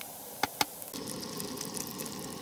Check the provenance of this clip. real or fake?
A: real